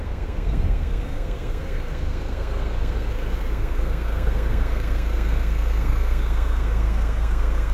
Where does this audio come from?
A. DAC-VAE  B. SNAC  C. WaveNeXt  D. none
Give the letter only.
B